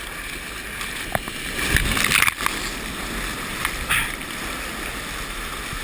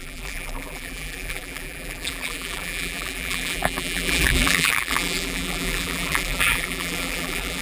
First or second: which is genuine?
first